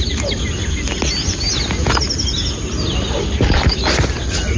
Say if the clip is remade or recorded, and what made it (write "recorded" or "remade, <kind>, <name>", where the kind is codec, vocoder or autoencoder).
recorded